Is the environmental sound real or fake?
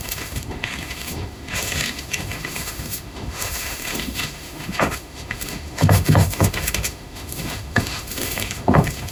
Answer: fake